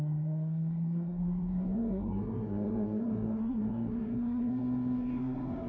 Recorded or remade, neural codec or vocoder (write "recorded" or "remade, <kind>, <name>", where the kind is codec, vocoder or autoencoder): remade, codec, SNAC